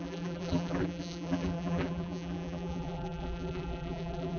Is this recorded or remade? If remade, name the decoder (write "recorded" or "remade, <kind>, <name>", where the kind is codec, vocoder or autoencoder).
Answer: remade, vocoder, BigVGAN v2